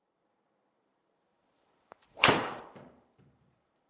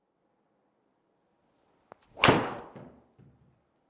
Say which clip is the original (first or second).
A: second